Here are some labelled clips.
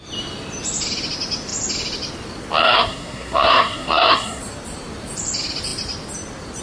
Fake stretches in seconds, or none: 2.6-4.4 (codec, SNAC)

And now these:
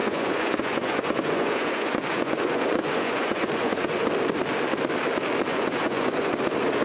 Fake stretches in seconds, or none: 0.0-4.1 (vocoder, Vocos); 5.5-6.3

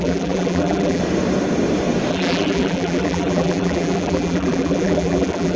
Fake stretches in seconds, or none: 0.0-1.0 (vocoder, BigVGAN v2); 2.1-5.6

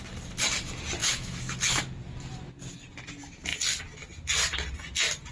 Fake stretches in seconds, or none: 1.0-1.8 (autoencoder, DAC-VAE)

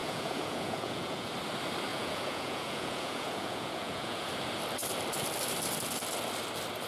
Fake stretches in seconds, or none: 0.0-1.3 (vocoder, Vocos); 1.9-4.3

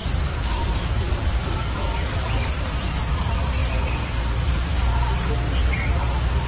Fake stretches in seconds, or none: 0.0-3.6 (vocoder, BigVGAN v2); 5.8-6.5

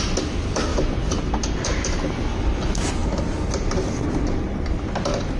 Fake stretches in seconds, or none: none

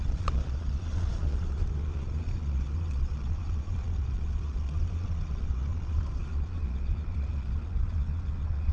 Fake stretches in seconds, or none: 0.0-8.7 (vocoder, Vocos)